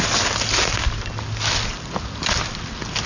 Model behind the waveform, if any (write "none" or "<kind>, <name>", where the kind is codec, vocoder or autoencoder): none